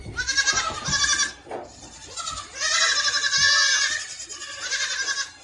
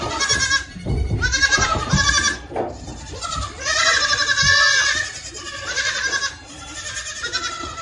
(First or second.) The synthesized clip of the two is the second